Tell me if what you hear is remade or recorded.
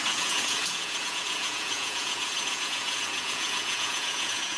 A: remade